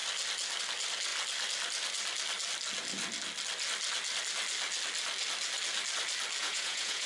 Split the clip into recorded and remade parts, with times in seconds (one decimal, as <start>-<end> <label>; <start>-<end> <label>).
0.0-6.4 recorded; 6.4-7.1 remade